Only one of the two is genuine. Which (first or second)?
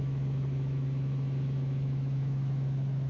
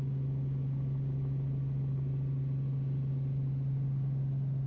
second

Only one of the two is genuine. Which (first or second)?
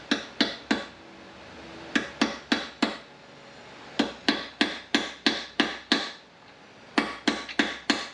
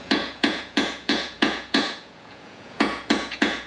first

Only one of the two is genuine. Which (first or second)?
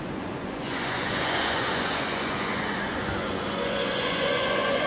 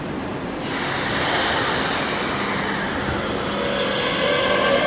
second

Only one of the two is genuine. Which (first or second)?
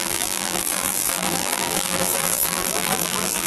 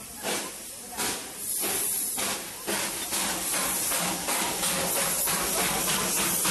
second